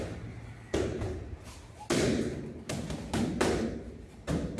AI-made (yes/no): no